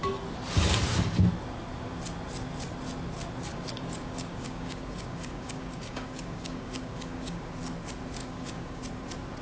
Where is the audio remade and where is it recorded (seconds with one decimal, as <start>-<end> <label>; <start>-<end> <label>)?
0.0-3.5 recorded; 3.5-7.4 remade; 7.4-8.2 recorded; 8.2-8.8 remade; 8.8-9.4 recorded